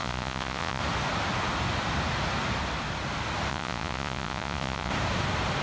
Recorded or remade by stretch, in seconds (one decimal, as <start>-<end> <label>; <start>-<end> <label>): 0.0-0.8 remade; 0.8-3.5 recorded; 3.5-4.9 remade; 4.9-5.6 recorded